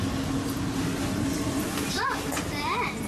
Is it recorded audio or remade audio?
recorded